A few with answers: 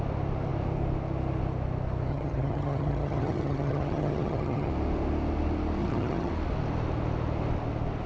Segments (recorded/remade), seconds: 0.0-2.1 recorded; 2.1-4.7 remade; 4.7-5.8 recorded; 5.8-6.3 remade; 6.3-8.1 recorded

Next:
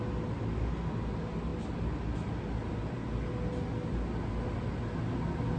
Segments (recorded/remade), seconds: 0.0-5.6 recorded